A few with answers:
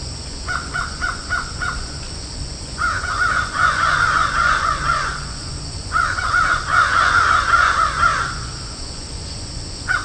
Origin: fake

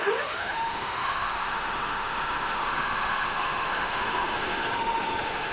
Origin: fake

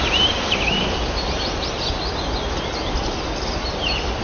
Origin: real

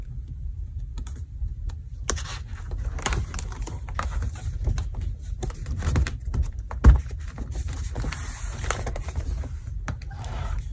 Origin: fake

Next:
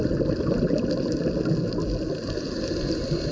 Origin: real